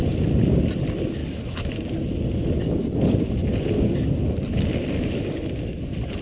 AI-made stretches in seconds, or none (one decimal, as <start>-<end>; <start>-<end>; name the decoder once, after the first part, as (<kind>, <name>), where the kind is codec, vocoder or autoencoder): none